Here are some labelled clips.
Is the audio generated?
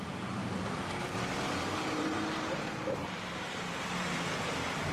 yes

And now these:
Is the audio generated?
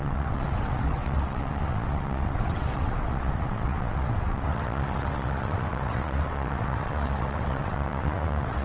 yes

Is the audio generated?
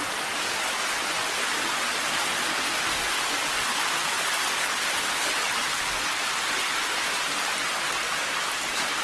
no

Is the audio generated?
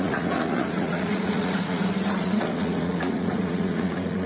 yes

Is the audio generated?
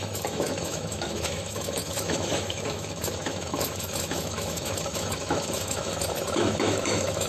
yes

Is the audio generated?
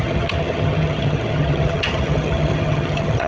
yes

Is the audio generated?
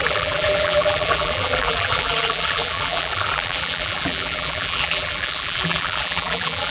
yes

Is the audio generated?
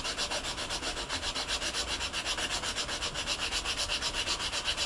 no